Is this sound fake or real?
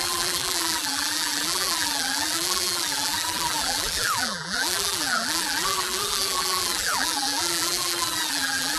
fake